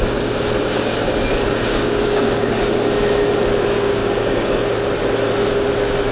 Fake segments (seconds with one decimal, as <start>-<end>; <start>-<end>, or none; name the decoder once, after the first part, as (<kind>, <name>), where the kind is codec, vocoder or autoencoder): 1.7-2.7 (codec, DAC); 4.0-4.6